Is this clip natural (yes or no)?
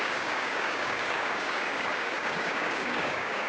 no